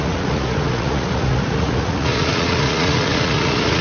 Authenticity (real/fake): fake